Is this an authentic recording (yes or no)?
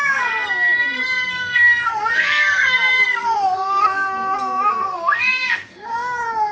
no